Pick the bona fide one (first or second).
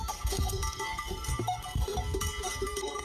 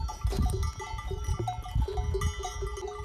second